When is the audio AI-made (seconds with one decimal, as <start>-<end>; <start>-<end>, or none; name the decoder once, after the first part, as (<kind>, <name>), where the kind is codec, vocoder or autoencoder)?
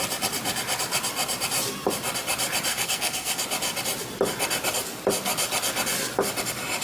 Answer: 2.7-3.4 (codec, SNAC)